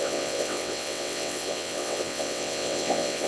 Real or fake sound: fake